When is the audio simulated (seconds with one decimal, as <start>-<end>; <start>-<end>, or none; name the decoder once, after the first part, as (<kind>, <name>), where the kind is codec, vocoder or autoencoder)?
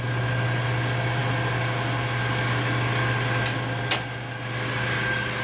none